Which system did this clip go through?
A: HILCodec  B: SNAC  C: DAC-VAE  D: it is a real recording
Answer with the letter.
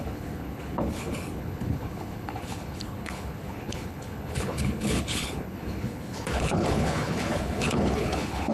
A